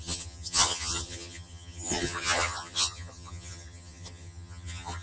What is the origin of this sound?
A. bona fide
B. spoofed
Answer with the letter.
B